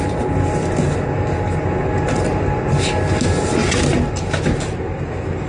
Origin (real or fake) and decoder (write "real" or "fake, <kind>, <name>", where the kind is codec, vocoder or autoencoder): real